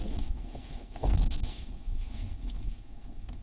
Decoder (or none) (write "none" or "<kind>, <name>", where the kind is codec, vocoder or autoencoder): codec, SNAC